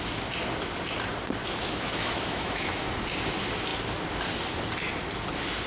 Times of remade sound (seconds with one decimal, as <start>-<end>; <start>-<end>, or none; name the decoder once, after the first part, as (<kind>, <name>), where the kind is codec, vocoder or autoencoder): 1.4-2.9 (autoencoder, DAC-VAE)